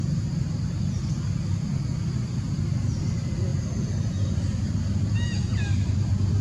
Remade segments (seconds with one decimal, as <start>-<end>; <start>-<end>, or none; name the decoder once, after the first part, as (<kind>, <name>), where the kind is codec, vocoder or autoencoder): none